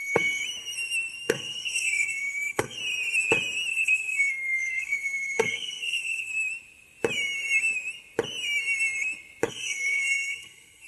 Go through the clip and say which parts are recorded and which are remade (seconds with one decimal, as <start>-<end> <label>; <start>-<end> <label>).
0.0-0.4 remade; 0.4-1.2 recorded; 1.2-2.8 remade; 2.8-3.7 recorded; 3.7-6.3 remade; 6.3-9.5 recorded; 9.5-10.9 remade